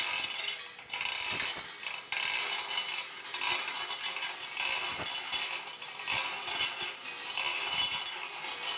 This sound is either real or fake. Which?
real